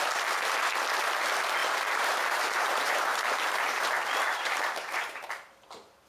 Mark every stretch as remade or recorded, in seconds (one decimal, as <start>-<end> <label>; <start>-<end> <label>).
0.0-1.6 recorded; 1.6-5.3 remade; 5.3-6.1 recorded